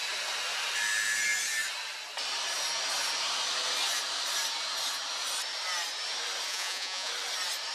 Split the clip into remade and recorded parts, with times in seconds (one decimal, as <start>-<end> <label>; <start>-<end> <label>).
0.0-6.5 recorded; 6.5-7.1 remade; 7.1-7.7 recorded